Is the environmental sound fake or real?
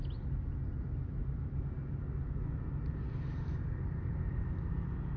real